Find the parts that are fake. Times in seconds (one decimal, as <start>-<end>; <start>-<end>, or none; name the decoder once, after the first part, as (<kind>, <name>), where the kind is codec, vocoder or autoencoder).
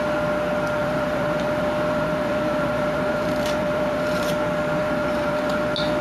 0.8-4.3 (vocoder, BigVGAN v2); 4.8-5.5